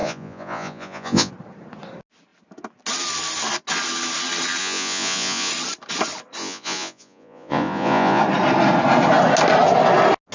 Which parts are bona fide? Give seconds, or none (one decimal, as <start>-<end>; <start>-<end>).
1.3-4.6; 5.5-6.4; 8.2-10.3